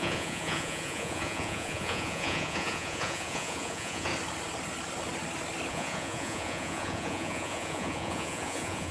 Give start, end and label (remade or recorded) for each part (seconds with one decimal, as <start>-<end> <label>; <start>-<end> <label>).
0.0-4.1 remade; 4.1-5.7 recorded; 5.7-8.9 remade